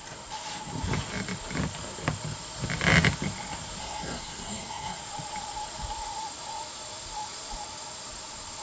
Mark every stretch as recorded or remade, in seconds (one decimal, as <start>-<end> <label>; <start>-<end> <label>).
0.0-3.8 recorded; 3.8-5.0 remade; 5.0-8.6 recorded